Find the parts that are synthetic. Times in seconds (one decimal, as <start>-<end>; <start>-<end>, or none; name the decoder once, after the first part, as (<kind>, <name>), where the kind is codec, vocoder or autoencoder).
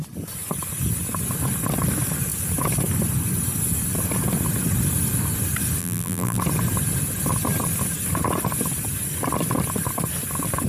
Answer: 5.8-6.4 (vocoder, BigVGAN v2)